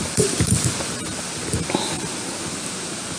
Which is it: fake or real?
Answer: real